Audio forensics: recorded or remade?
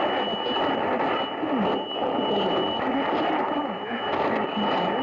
recorded